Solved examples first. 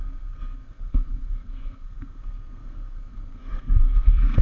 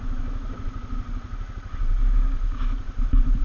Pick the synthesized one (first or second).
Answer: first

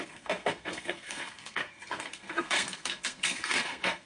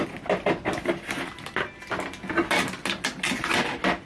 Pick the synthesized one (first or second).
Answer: first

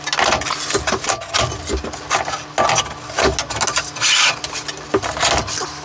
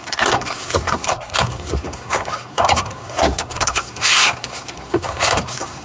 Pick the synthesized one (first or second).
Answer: second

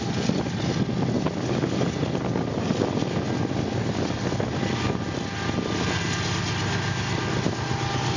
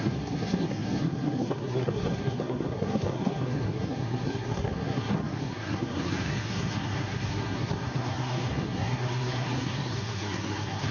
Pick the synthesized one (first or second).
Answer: second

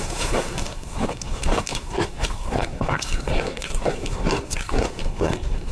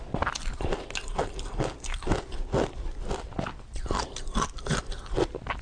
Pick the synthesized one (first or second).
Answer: first